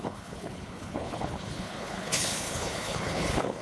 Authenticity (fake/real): fake